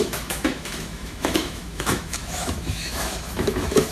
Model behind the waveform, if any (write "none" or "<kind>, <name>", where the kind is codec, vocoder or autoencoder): autoencoder, DAC-VAE